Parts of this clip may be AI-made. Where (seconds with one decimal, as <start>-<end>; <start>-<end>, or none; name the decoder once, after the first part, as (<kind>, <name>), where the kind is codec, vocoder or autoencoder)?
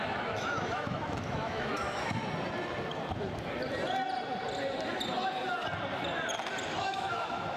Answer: 0.0-2.2 (autoencoder, DAC-VAE); 6.8-7.6